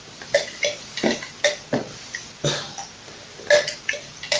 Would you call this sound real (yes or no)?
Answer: yes